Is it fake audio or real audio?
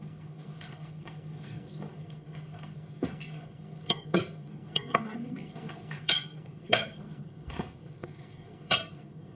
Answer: fake